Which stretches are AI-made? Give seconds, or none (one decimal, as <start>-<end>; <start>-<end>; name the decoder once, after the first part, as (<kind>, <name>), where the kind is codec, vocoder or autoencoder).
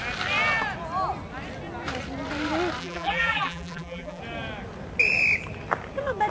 2.8-4.2 (vocoder, BigVGAN v2)